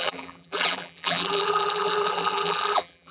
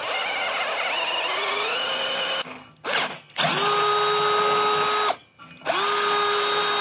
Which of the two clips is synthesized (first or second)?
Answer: first